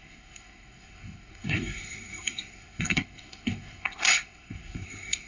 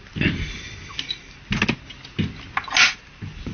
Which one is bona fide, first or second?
second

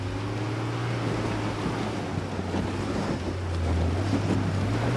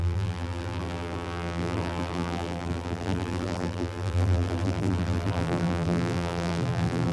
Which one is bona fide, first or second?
first